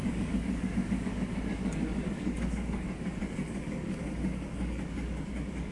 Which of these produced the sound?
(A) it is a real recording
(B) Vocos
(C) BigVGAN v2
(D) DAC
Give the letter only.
D